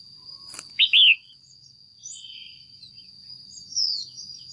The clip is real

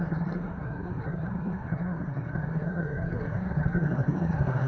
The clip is fake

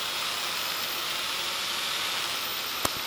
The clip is real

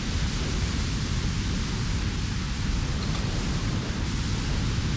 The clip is real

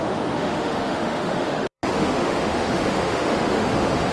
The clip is fake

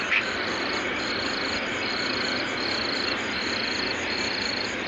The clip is fake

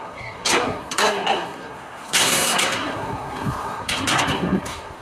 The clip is fake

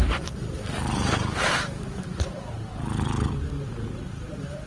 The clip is real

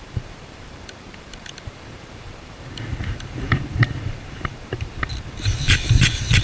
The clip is fake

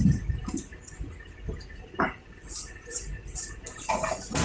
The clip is real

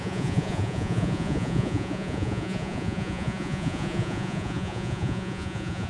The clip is fake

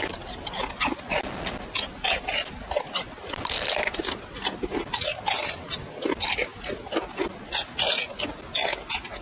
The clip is real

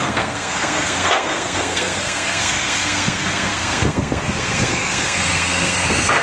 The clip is fake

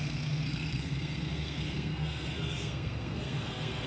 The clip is fake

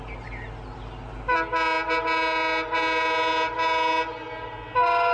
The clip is real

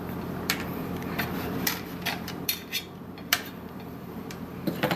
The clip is fake